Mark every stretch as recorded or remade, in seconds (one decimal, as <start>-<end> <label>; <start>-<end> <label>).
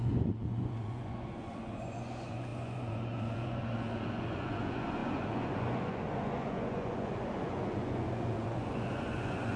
0.0-9.6 remade